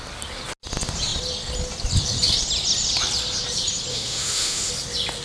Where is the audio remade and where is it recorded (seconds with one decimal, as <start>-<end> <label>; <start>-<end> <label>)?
0.0-3.9 recorded; 3.9-4.7 remade; 4.7-5.2 recorded